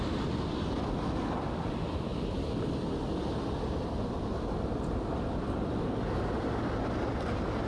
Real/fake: real